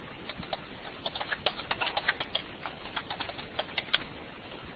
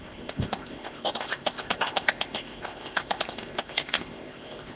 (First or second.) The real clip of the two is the first